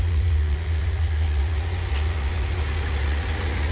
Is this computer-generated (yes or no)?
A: yes